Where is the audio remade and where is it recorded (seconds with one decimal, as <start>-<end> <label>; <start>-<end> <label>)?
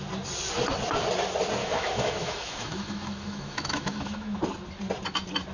0.0-1.6 recorded; 1.6-4.4 remade; 4.4-5.5 recorded